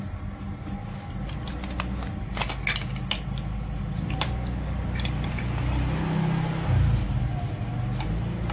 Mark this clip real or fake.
real